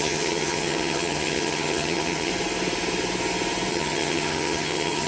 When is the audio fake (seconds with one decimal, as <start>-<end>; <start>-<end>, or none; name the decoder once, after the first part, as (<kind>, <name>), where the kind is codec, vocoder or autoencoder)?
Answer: 0.0-2.3 (vocoder, HiFi-GAN); 3.7-5.1